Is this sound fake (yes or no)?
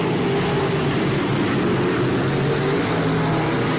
no